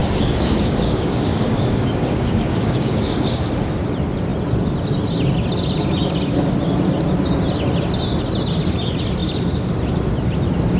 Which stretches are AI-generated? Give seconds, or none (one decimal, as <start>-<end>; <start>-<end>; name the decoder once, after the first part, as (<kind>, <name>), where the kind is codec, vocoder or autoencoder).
0.0-3.5 (codec, DAC)